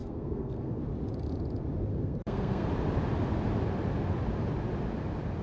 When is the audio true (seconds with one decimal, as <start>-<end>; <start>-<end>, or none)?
0.8-1.9; 2.7-5.4